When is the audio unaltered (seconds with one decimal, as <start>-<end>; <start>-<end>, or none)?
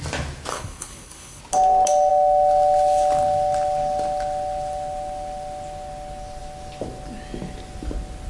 0.0-0.5; 1.4-8.3